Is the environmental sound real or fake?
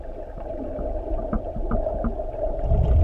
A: real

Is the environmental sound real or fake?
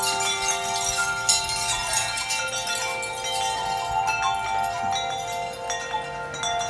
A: real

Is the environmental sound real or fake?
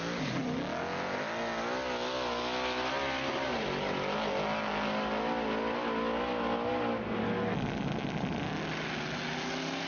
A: real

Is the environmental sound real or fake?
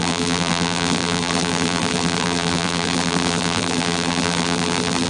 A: fake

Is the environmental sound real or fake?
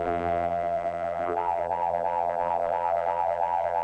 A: fake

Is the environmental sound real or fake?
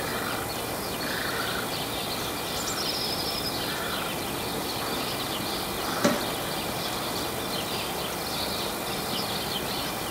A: real